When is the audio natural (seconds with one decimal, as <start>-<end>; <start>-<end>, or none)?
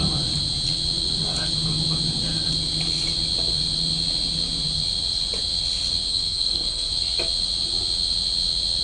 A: 0.0-6.1; 6.9-8.8